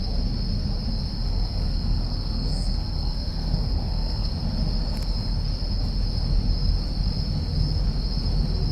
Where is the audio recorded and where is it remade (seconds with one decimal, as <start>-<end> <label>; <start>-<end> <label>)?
0.0-1.1 recorded; 1.1-4.3 remade; 4.3-8.7 recorded